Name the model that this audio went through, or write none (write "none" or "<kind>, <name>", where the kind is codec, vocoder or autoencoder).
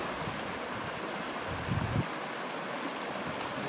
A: none